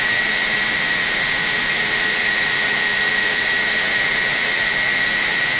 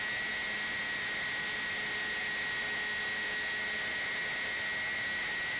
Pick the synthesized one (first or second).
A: first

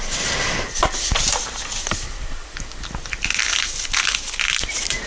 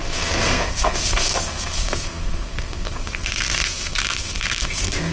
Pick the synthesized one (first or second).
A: second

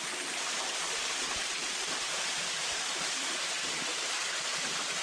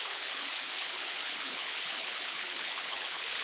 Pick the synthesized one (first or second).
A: second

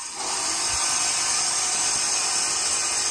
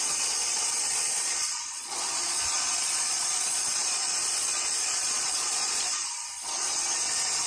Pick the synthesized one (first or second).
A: second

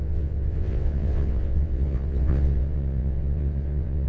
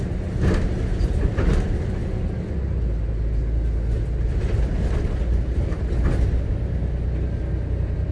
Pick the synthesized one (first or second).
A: first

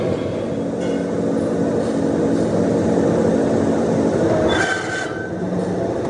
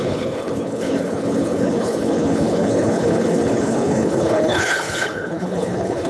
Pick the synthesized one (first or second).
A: second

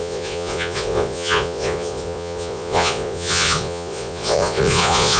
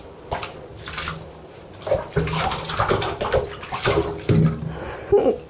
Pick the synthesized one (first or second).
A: first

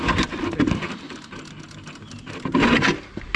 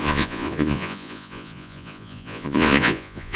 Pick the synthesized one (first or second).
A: second